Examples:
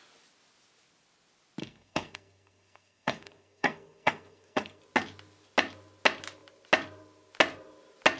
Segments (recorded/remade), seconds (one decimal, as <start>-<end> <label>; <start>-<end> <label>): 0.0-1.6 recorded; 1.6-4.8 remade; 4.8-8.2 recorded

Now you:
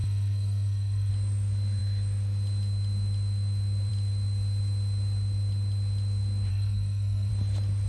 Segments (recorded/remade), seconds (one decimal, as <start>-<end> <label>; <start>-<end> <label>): 0.0-1.1 remade; 1.1-6.5 recorded; 6.5-7.3 remade; 7.3-7.9 recorded

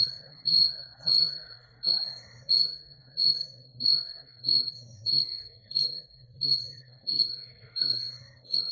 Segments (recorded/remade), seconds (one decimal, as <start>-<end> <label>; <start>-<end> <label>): 0.0-8.7 remade

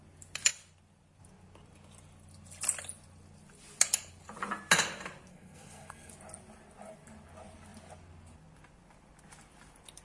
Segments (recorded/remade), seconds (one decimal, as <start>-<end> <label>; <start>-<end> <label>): 0.0-5.3 recorded; 5.3-6.1 remade; 6.1-10.0 recorded

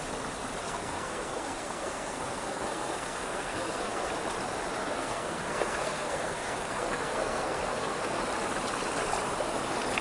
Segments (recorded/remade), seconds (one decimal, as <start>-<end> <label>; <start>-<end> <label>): 0.0-0.6 recorded; 0.6-4.1 remade; 4.1-4.8 recorded; 4.8-8.2 remade; 8.2-10.0 recorded

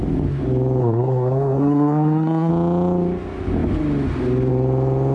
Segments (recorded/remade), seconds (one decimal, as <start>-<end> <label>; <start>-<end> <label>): 0.0-0.8 recorded; 0.8-2.5 remade; 2.5-5.1 recorded

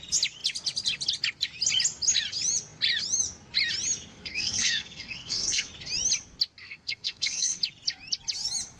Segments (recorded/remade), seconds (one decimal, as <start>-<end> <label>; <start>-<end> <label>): 0.0-4.1 recorded; 4.1-5.7 remade; 5.7-6.6 recorded; 6.6-7.6 remade; 7.6-8.8 recorded